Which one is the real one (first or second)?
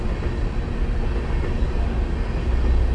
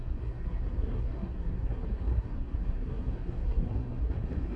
first